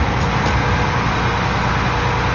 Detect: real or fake real